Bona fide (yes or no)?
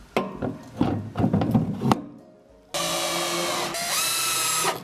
yes